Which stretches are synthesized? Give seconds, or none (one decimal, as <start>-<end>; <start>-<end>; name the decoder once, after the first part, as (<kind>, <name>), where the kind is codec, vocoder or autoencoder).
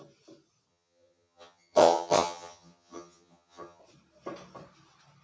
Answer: 0.7-3.8 (vocoder, HiFi-GAN)